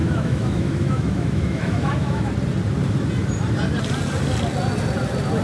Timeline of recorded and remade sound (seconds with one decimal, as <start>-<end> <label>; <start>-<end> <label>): 0.0-2.3 remade; 2.3-5.4 recorded